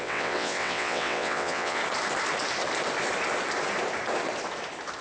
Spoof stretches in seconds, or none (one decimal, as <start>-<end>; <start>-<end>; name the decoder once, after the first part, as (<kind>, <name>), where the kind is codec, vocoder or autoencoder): 0.0-1.8 (vocoder, WaveNeXt)